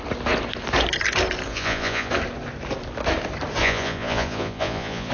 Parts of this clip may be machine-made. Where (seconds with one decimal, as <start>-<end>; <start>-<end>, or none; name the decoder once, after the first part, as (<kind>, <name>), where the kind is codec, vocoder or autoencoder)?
1.5-2.1 (vocoder, Vocos); 3.6-5.1